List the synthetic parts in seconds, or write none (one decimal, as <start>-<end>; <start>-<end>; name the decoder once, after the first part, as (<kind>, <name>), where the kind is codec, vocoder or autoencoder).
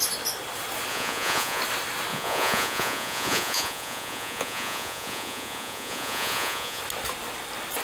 0.9-1.6 (vocoder, Vocos); 2.1-6.8